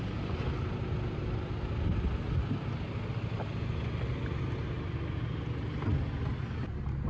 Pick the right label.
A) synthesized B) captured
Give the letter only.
B